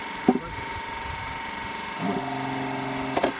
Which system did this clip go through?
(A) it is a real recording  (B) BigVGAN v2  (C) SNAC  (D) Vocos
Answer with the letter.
A